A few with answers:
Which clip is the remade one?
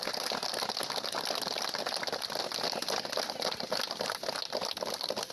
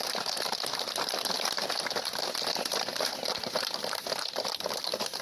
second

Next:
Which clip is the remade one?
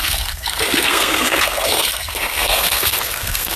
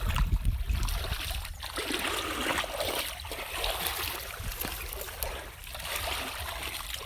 first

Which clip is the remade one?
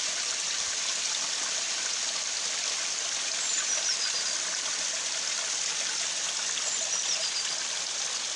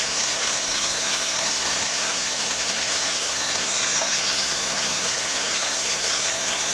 second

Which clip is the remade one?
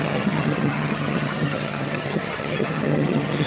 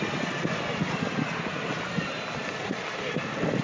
first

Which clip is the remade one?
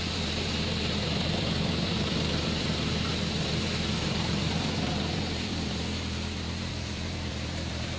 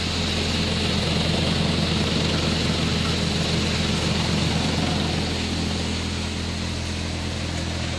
first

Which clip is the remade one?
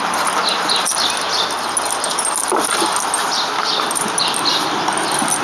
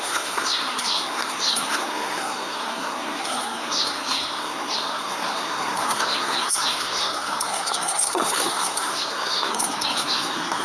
second